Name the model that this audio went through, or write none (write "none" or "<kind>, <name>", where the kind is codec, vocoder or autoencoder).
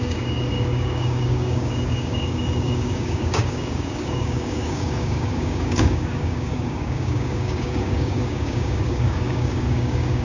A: codec, DAC